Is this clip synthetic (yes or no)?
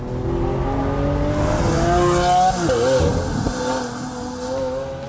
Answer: no